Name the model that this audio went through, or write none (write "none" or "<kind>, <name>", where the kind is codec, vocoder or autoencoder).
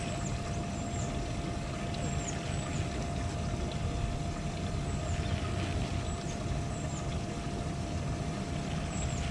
none